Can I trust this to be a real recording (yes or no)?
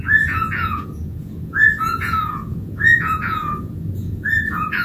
no